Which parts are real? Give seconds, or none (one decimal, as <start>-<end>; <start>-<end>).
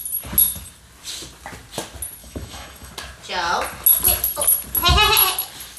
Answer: 0.0-2.2; 2.9-5.8